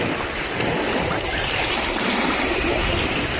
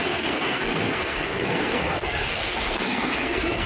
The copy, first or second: second